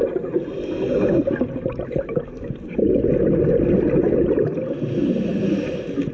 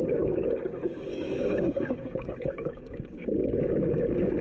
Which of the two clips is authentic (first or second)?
first